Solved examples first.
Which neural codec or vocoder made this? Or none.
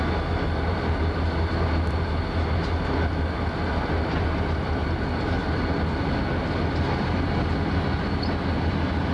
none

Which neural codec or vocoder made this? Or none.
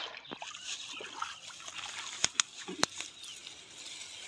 none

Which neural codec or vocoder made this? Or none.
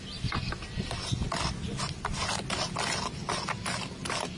none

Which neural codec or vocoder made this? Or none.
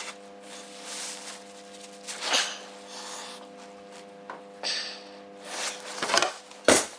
none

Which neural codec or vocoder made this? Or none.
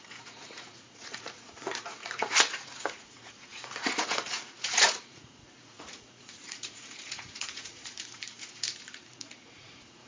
vocoder, Vocos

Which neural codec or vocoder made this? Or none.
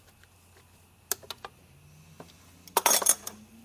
none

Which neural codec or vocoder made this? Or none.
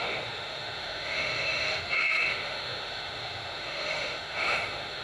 autoencoder, DAC-VAE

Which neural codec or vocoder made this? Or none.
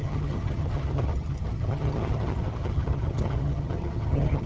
vocoder, HiFi-GAN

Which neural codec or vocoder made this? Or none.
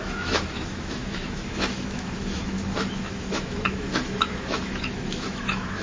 autoencoder, DAC-VAE